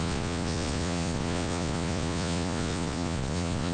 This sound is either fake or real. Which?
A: fake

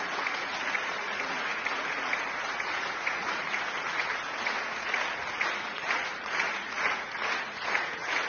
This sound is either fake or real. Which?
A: fake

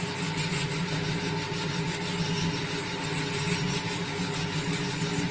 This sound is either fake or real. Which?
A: real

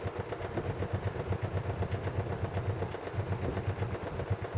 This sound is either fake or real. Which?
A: real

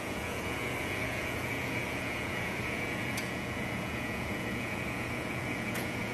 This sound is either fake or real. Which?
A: fake